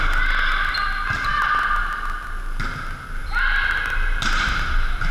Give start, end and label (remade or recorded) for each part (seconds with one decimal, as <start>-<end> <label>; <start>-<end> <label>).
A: 0.0-5.1 recorded